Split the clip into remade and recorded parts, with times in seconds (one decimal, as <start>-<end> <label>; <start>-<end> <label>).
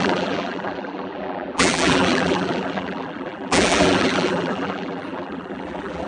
0.0-6.1 remade